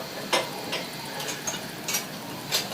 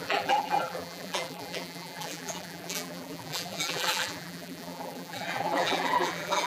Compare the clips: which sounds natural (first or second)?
first